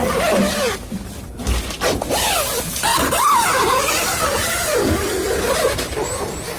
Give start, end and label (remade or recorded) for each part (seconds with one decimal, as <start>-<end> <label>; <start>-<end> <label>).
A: 0.0-6.6 recorded